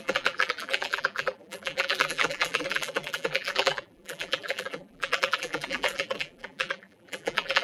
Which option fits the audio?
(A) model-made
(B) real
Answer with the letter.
A